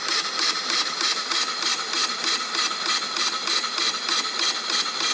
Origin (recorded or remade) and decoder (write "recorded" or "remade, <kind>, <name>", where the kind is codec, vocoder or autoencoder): recorded